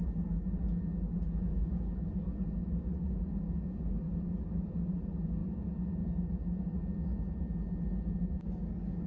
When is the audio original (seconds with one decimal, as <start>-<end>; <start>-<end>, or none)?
0.0-1.5; 2.2-2.6; 3.2-9.1